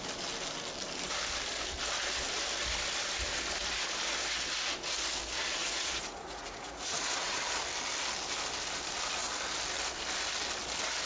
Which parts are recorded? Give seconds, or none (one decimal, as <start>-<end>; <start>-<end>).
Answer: 0.0-5.6; 7.4-11.1